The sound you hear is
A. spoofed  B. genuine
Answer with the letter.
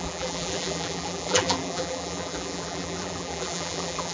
A